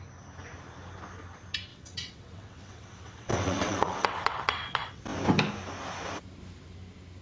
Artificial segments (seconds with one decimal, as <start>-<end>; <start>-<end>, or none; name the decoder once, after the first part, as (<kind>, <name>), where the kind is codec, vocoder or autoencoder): 1.7-5.0 (vocoder, WaveNeXt)